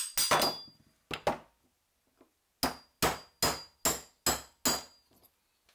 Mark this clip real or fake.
real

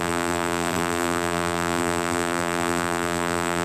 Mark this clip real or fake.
fake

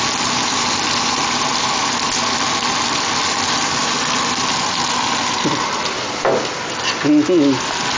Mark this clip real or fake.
real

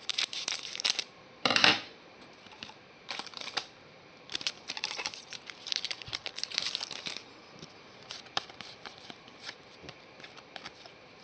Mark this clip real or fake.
fake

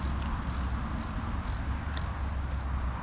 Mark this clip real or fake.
real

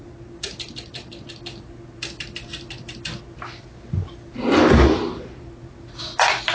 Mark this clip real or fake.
real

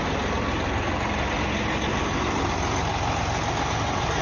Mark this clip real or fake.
real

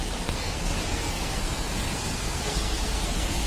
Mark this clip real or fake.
fake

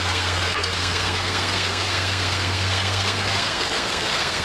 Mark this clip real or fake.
fake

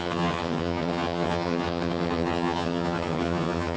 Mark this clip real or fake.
fake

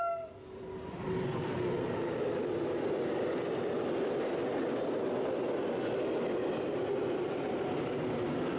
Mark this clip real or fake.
real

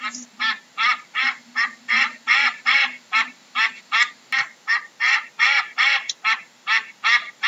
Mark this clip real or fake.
fake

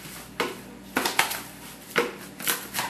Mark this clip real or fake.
real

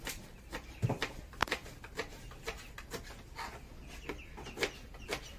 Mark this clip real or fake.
real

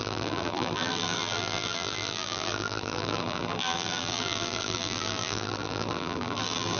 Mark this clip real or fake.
fake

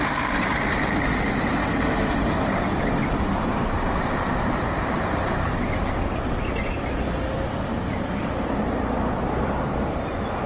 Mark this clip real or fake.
real